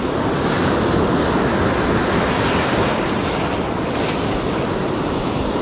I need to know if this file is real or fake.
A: real